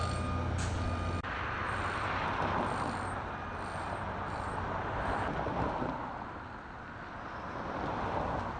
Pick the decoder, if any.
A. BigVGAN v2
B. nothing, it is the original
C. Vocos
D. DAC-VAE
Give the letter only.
B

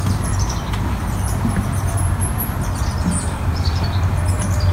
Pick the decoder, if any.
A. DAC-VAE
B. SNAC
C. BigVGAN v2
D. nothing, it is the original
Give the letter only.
C